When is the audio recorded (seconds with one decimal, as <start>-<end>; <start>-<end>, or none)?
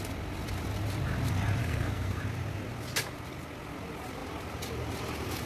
0.0-1.6; 2.2-5.5